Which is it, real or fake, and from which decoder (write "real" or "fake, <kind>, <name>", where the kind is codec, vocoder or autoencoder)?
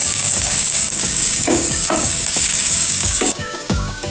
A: fake, codec, DAC